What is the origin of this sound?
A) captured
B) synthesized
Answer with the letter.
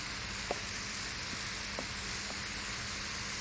A